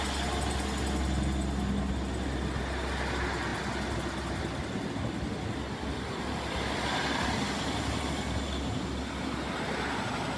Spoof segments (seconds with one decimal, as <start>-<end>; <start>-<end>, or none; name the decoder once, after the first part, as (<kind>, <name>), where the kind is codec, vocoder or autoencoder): none